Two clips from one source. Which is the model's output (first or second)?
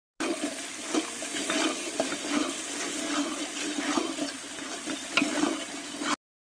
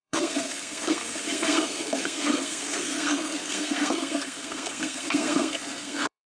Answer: second